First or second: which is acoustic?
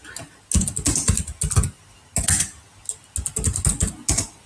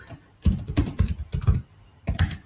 first